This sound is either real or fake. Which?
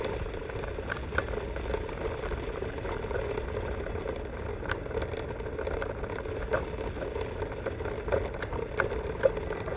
real